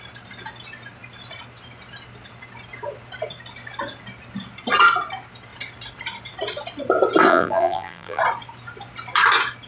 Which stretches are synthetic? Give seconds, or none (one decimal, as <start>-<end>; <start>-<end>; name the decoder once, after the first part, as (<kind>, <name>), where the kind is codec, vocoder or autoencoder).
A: 7.3-8.2 (vocoder, BigVGAN v2)